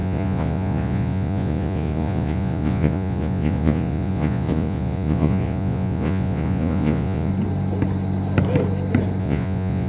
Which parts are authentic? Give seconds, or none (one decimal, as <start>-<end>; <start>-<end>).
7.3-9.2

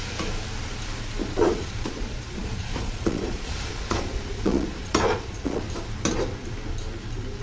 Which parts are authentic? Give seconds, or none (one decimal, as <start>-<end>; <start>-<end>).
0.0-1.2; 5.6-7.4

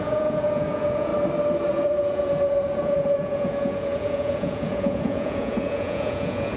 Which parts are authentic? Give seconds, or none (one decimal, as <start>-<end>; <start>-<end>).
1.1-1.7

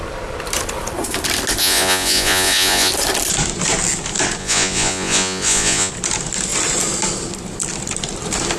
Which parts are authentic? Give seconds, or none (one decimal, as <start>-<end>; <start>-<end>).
0.0-1.6; 2.9-4.4; 5.9-8.6